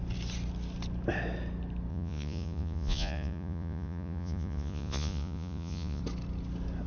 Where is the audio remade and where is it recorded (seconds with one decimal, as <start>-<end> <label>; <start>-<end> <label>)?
0.0-1.9 recorded; 1.9-6.0 remade; 6.0-6.9 recorded

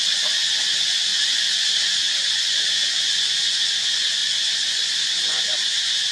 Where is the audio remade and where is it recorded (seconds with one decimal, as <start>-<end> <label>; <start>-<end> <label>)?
0.0-6.1 remade

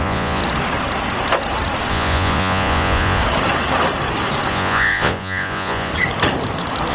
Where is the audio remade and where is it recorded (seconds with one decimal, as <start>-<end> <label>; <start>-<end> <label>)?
0.0-0.4 remade; 0.4-1.9 recorded; 1.9-3.2 remade; 3.2-4.5 recorded; 4.5-5.9 remade; 5.9-6.9 recorded

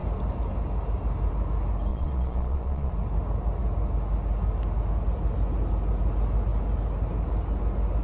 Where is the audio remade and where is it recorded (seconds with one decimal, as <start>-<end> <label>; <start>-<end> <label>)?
0.0-1.9 recorded; 1.9-2.9 remade; 2.9-8.0 recorded